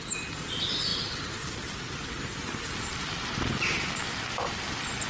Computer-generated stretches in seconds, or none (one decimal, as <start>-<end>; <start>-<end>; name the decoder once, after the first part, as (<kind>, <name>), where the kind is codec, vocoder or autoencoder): none